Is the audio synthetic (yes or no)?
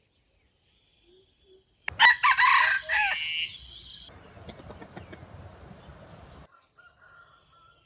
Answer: no